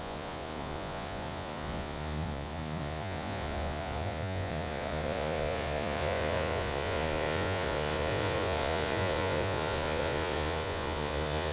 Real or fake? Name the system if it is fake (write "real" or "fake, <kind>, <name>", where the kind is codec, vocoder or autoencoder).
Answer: fake, vocoder, Vocos